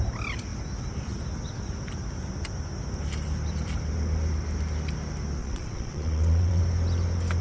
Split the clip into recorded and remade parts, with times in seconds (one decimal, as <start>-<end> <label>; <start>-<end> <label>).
0.0-5.4 recorded; 5.4-6.6 remade; 6.6-7.4 recorded